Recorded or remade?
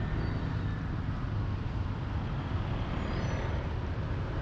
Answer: recorded